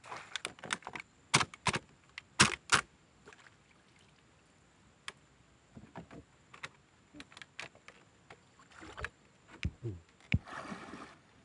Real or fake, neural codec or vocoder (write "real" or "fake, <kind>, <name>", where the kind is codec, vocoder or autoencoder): real